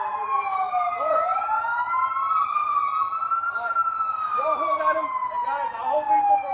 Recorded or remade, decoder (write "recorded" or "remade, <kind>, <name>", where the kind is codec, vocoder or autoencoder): recorded